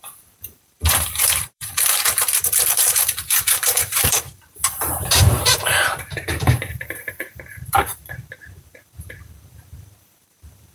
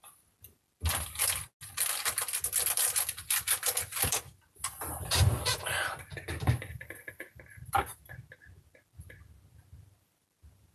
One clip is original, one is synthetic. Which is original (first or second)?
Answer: second